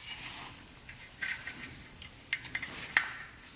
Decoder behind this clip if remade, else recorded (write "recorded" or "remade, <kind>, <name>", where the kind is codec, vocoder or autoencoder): recorded